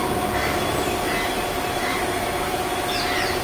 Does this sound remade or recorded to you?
recorded